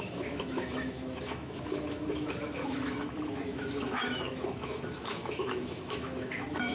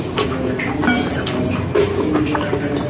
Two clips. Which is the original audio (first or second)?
second